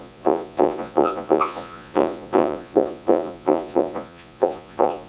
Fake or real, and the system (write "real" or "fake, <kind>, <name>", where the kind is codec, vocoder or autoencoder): fake, vocoder, Vocos